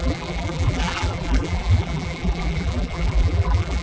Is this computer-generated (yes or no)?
yes